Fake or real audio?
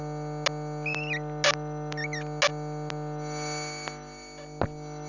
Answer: real